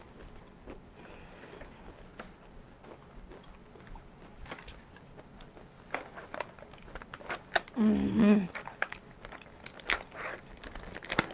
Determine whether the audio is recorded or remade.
recorded